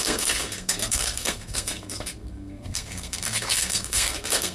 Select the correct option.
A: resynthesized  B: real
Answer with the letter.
A